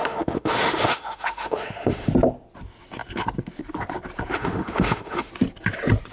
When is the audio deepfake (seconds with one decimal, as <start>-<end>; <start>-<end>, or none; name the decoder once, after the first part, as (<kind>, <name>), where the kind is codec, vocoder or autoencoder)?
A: 0.0-2.1 (autoencoder, DAC-VAE); 4.3-5.3